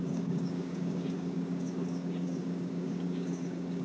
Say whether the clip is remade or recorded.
remade